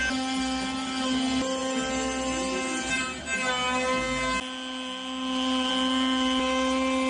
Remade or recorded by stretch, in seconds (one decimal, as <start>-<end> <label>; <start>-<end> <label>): 0.0-7.1 recorded